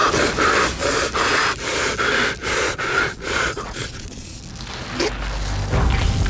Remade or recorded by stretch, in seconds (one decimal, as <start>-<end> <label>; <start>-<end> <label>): 0.0-2.4 recorded; 2.4-4.4 remade; 4.4-6.3 recorded